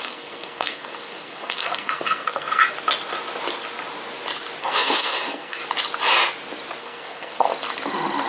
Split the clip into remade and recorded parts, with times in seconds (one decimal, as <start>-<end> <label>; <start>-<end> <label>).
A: 0.0-2.6 remade; 2.6-4.6 recorded; 4.6-5.6 remade; 5.6-6.8 recorded; 6.8-7.5 remade; 7.5-8.3 recorded

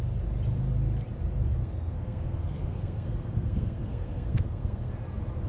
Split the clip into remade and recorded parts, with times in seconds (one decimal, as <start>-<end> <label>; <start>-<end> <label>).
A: 0.0-1.6 recorded; 1.6-4.9 remade; 4.9-5.5 recorded